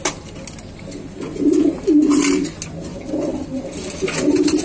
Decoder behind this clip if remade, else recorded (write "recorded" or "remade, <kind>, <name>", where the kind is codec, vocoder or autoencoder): recorded